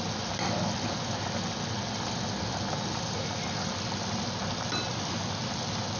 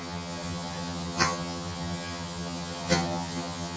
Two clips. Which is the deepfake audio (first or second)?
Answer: second